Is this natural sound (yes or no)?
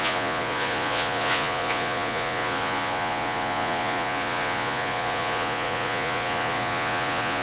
no